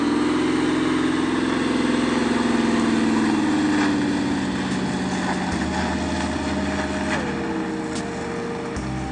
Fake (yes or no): no